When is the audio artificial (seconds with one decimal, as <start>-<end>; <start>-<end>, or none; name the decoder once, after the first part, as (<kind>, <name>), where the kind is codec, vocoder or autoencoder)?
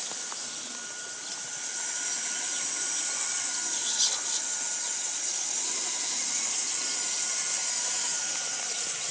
7.6-8.2 (vocoder, BigVGAN v2)